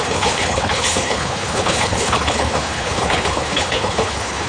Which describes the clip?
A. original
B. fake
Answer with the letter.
B